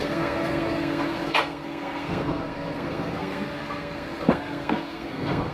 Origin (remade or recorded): remade